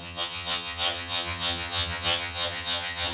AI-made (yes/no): yes